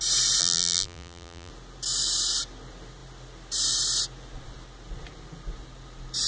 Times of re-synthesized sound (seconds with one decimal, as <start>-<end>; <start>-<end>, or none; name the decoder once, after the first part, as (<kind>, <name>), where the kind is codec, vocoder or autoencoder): 0.4-1.5 (vocoder, BigVGAN v2)